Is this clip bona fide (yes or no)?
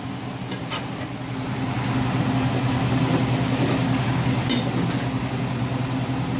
yes